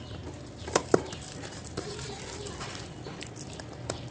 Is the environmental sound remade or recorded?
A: remade